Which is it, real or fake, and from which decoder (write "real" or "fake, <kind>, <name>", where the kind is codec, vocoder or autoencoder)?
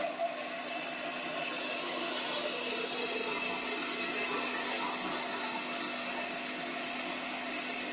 real